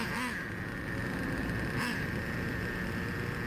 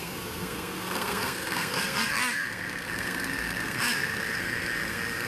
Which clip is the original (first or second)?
first